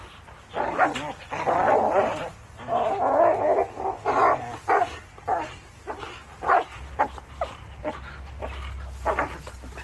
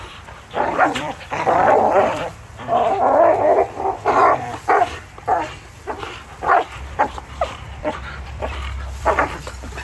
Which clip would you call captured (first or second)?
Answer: first